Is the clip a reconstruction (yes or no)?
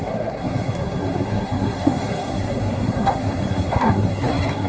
yes